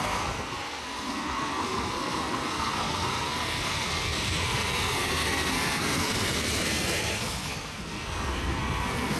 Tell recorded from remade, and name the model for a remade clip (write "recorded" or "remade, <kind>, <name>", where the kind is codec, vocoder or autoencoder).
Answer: remade, codec, SNAC